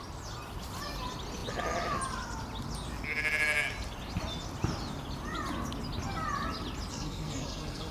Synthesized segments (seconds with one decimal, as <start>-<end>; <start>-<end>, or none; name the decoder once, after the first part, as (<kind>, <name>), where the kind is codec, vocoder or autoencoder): 6.9-7.9 (codec, SNAC)